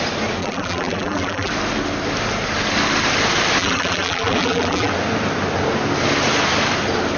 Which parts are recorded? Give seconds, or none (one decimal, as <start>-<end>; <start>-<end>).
0.0-0.4; 1.5-3.6; 4.9-7.2